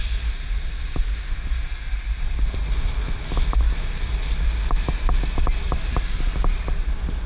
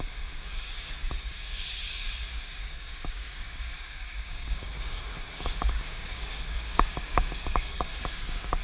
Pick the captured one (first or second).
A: first